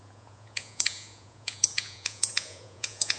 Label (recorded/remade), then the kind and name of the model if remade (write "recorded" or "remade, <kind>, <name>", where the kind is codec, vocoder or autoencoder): remade, vocoder, Vocos